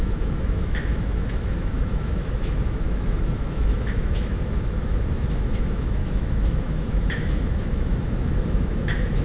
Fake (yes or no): yes